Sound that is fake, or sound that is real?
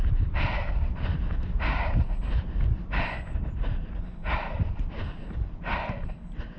real